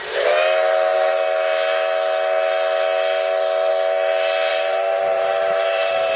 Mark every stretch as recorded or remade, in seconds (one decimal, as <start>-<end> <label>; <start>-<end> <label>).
0.0-4.5 recorded; 4.5-6.2 remade